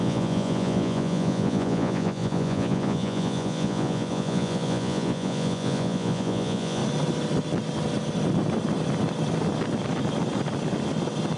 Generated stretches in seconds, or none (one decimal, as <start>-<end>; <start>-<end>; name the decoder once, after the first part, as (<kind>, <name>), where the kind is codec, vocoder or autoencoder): 0.0-6.8 (vocoder, Vocos)